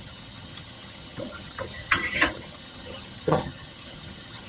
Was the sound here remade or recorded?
remade